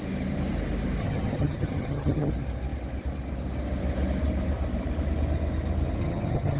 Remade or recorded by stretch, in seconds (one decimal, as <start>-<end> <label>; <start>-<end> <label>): 0.0-1.0 recorded; 1.0-2.3 remade; 2.3-6.0 recorded; 6.0-6.6 remade